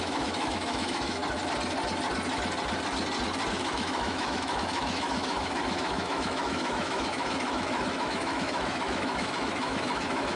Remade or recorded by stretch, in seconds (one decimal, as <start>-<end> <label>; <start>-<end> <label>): 0.0-1.2 remade; 1.2-3.5 recorded; 3.5-10.4 remade